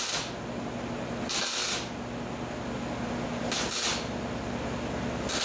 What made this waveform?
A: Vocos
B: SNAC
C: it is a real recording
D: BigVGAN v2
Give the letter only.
C